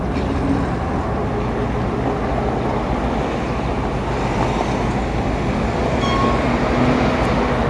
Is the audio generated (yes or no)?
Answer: no